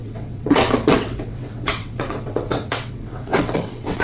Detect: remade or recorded remade